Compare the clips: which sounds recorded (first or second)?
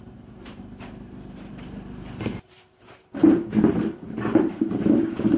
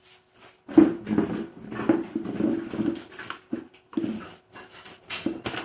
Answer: second